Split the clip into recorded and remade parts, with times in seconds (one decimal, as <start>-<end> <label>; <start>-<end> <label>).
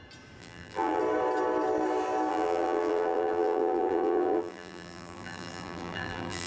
0.0-0.4 recorded; 0.4-1.0 remade; 1.0-2.3 recorded; 2.3-6.5 remade